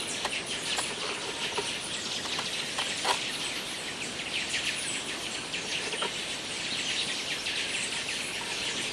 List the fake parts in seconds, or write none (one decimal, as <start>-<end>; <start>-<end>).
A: none